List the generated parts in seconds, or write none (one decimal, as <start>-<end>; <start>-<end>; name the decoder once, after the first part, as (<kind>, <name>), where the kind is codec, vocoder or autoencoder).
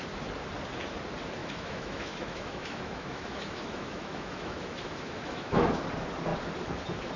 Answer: 1.4-5.7 (autoencoder, DAC-VAE)